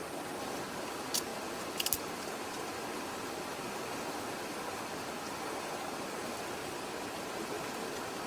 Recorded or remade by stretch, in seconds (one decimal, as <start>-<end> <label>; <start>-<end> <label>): 0.0-8.3 recorded